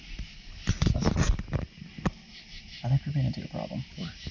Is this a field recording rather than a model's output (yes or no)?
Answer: yes